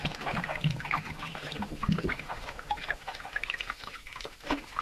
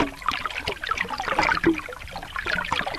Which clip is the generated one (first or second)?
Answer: first